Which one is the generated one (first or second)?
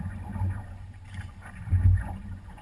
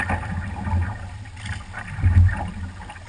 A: first